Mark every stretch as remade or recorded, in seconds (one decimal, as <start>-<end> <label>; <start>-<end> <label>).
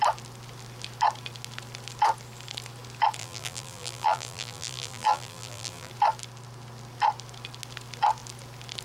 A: 0.0-3.2 recorded; 3.2-5.9 remade; 5.9-8.8 recorded